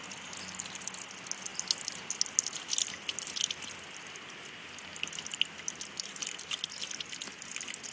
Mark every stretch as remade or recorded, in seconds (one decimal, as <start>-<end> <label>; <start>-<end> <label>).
0.0-7.9 recorded

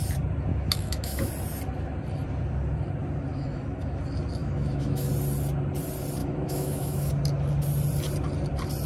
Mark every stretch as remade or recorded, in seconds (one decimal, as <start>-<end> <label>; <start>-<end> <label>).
0.0-0.5 recorded; 0.5-1.3 remade; 1.3-3.3 recorded; 3.3-4.0 remade; 4.0-4.4 recorded; 4.4-5.1 remade; 5.1-6.2 recorded; 6.2-7.1 remade; 7.1-8.9 recorded

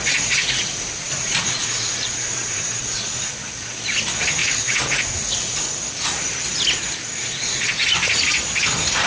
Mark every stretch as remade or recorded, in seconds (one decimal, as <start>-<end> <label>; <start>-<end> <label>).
0.0-3.3 remade; 3.3-4.4 recorded; 4.4-5.8 remade; 5.8-7.2 recorded; 7.2-7.8 remade; 7.8-9.1 recorded

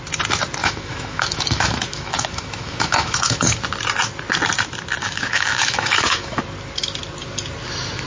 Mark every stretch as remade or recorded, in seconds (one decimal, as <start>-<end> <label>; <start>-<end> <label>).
0.0-0.6 recorded; 0.6-3.6 remade; 3.6-5.0 recorded; 5.0-6.4 remade; 6.4-8.1 recorded

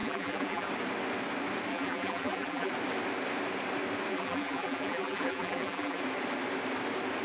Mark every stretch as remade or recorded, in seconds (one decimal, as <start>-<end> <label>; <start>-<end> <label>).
0.0-0.7 remade; 0.7-1.7 recorded; 1.7-2.7 remade; 2.7-4.1 recorded; 4.1-6.0 remade; 6.0-7.2 recorded